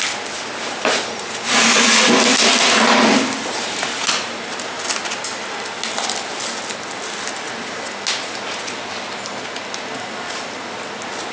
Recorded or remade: recorded